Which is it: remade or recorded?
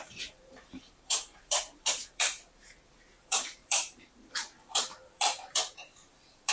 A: remade